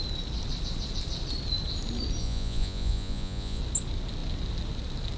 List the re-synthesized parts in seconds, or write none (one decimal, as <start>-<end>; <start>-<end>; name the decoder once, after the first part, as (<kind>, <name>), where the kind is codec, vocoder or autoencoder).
2.2-3.6 (vocoder, Vocos)